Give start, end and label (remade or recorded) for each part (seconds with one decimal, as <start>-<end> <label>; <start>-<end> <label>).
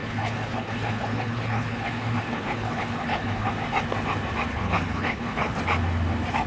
0.0-3.5 remade; 3.5-4.5 recorded; 4.5-5.6 remade; 5.6-6.5 recorded